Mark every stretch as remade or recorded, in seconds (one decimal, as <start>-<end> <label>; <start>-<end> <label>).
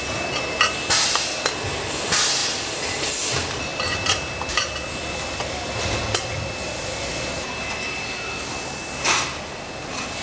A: 0.0-10.2 recorded